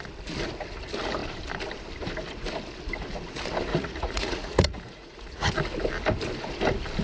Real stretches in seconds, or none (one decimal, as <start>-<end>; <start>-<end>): 0.0-3.7; 5.5-7.0